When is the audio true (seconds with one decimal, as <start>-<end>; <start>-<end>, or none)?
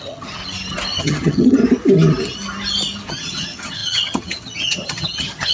0.4-1.0; 1.6-3.1